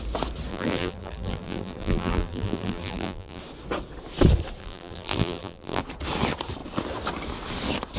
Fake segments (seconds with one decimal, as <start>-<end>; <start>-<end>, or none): 0.5-3.4; 4.6-5.8